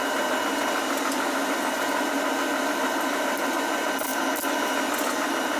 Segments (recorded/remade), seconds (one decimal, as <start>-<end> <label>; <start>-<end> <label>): 0.0-5.6 recorded